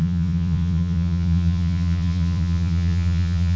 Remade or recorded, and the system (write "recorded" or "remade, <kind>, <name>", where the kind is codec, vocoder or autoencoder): remade, vocoder, Vocos